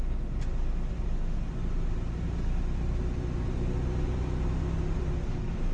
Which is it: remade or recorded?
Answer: recorded